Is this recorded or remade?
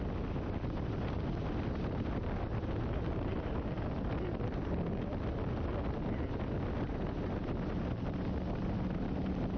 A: recorded